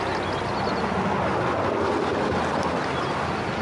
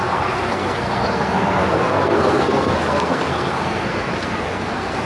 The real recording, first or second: first